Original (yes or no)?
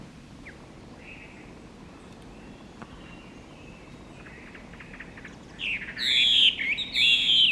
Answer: yes